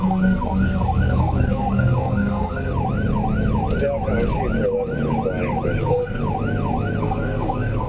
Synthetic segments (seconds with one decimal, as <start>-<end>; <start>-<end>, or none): 0.0-2.7; 5.8-6.2; 7.0-7.9